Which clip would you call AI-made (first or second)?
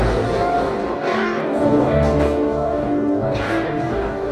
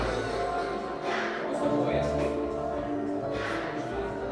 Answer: first